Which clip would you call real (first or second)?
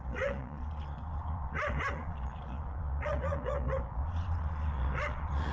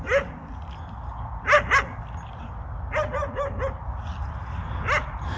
second